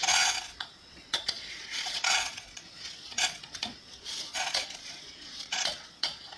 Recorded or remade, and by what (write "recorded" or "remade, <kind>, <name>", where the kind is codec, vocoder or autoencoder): remade, vocoder, Vocos